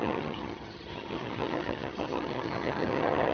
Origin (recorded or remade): remade